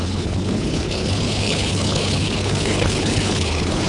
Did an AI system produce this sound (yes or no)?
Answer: yes